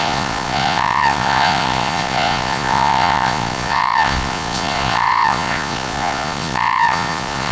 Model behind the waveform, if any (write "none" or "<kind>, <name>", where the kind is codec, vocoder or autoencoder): vocoder, Vocos